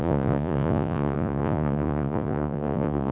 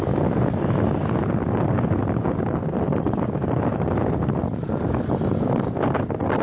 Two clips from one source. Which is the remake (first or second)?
first